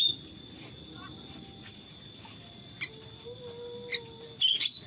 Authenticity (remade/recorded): recorded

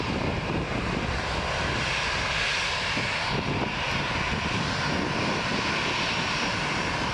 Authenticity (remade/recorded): recorded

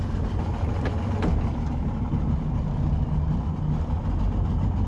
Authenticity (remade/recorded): recorded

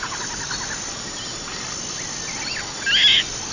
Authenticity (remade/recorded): recorded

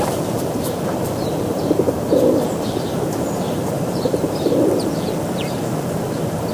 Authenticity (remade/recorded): remade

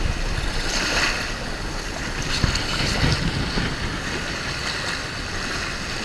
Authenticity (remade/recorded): recorded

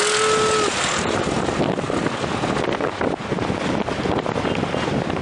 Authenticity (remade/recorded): recorded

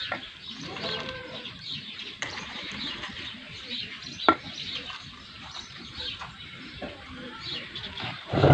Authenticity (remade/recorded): remade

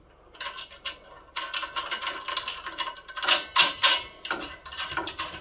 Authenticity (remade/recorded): recorded